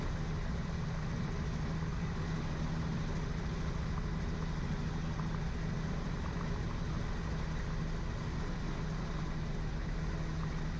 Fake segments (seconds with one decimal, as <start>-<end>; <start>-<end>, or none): none